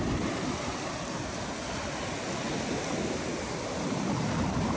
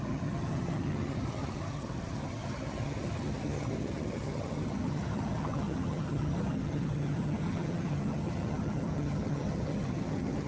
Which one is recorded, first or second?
first